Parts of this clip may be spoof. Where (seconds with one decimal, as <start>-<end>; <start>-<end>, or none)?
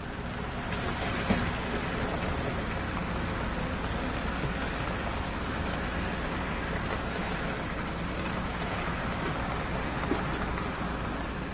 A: 8.5-9.0